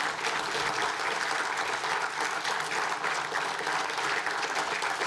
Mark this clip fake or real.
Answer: real